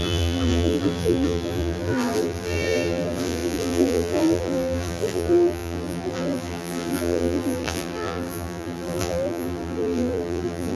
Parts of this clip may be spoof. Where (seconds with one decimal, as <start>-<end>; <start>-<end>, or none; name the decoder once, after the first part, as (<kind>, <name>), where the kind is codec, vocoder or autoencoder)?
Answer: 0.0-10.7 (vocoder, BigVGAN v2)